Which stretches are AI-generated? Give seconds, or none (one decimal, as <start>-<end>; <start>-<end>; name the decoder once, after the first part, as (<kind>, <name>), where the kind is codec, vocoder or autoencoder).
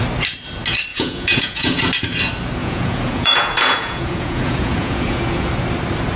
0.9-1.8 (vocoder, Vocos); 2.6-5.5